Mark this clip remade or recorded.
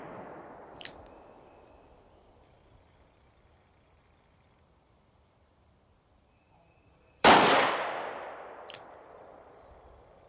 remade